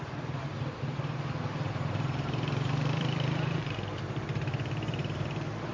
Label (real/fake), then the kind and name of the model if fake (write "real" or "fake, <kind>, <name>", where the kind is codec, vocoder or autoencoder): fake, vocoder, BigVGAN v2